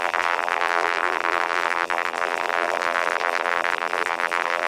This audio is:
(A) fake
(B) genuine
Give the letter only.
A